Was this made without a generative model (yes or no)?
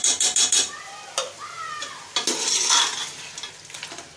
yes